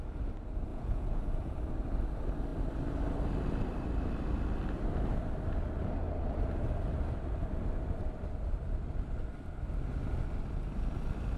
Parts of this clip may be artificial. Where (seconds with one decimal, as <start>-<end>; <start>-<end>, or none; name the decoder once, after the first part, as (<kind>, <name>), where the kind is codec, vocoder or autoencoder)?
0.7-1.6 (vocoder, Vocos)